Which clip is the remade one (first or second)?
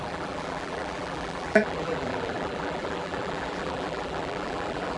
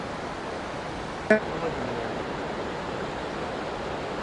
first